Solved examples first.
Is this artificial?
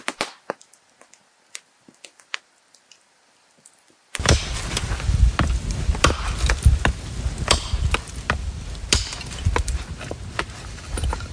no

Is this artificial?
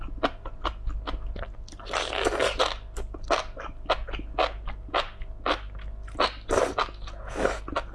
no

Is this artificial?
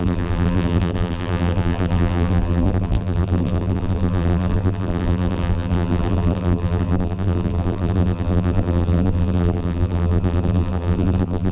yes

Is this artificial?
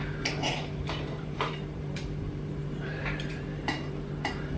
yes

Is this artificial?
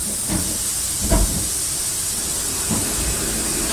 no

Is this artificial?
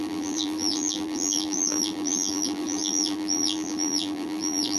yes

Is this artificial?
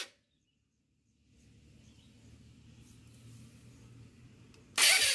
no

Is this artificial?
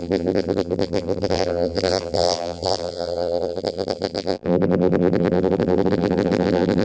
yes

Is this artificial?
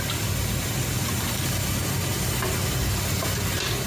no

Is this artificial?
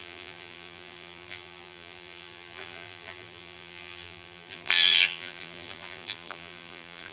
yes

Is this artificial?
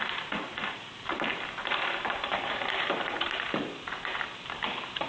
yes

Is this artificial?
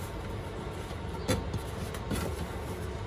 no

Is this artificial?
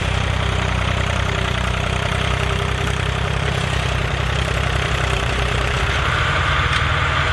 yes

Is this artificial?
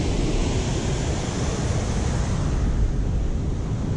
no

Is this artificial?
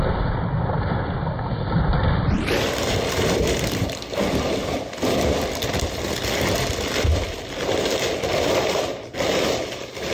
yes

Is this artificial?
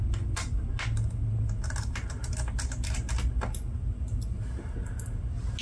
no